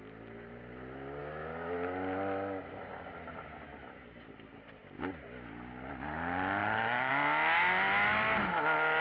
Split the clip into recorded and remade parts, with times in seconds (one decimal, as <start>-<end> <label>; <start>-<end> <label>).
0.0-6.6 recorded; 6.6-7.1 remade; 7.1-9.0 recorded